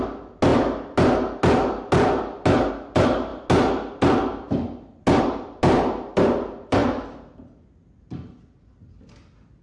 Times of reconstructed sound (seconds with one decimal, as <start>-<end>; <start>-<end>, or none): none